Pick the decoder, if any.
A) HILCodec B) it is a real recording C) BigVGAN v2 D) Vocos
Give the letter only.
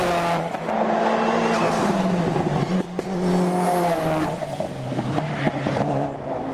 B